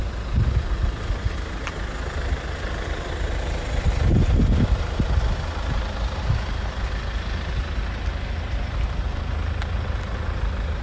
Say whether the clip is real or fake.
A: real